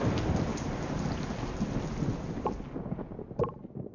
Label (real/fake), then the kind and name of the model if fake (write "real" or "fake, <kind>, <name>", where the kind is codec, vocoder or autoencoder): real